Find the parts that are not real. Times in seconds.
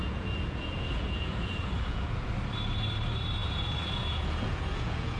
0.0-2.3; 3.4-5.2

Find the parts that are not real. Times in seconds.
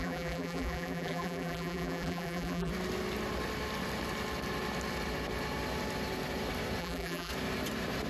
0.0-2.7; 6.8-7.3